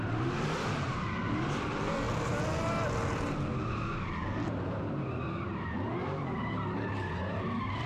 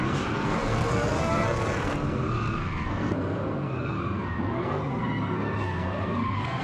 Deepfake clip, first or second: second